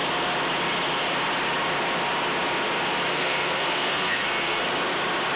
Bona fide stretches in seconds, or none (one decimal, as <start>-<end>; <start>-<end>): 0.0-3.1; 4.6-5.4